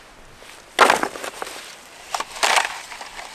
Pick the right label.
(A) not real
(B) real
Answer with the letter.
B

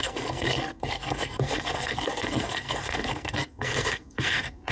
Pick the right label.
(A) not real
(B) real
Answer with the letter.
A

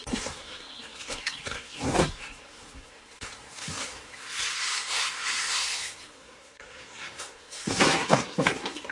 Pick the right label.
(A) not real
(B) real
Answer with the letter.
A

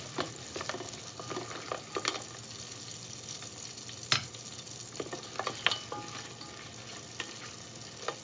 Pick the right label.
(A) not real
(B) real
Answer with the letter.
B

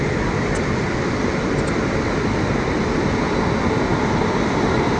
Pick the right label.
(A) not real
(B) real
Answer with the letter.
B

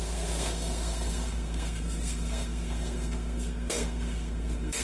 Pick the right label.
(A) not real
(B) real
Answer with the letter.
A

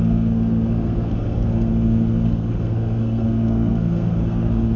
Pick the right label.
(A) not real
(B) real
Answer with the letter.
A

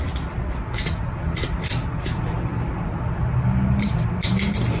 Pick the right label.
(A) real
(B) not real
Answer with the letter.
A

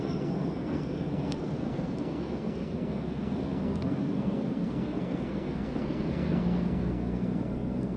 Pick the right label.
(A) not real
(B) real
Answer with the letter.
A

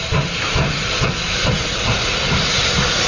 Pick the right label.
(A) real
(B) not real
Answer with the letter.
A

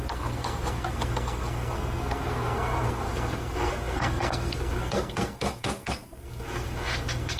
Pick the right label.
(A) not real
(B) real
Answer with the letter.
A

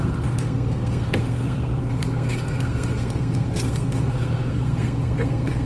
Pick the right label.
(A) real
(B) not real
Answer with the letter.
B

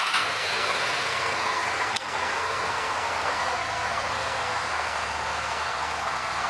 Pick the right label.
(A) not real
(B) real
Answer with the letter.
A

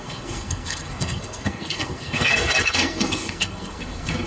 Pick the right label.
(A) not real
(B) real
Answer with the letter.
A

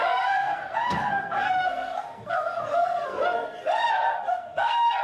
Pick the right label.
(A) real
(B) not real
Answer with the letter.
B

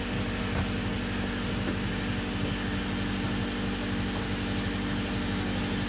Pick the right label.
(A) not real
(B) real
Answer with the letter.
B